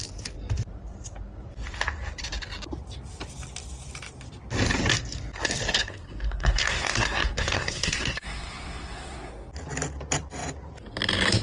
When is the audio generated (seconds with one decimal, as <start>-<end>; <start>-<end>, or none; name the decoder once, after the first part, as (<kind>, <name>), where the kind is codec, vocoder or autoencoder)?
5.8-9.3 (codec, SNAC)